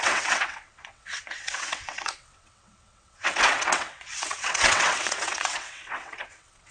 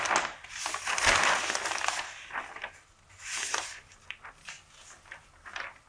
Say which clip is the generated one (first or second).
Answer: first